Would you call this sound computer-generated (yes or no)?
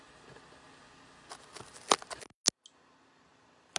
no